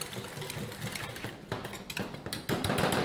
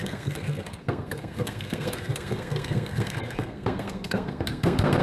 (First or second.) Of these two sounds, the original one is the first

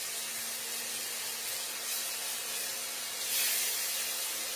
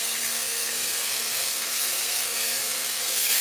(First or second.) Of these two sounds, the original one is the first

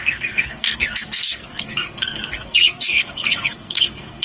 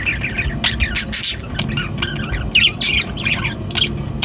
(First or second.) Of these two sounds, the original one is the second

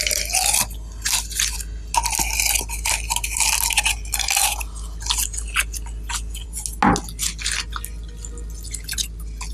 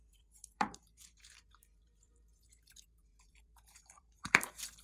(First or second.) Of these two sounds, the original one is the first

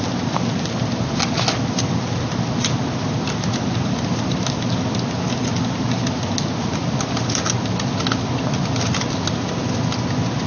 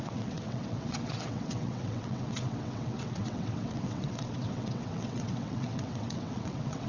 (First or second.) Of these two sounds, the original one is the first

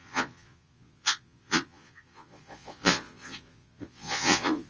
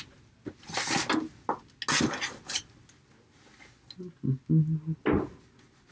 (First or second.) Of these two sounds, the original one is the second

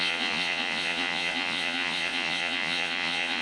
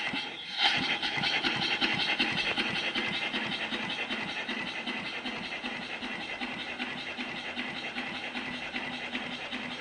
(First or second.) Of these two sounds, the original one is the second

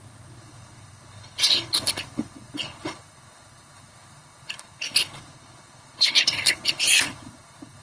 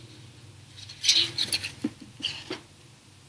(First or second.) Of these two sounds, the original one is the second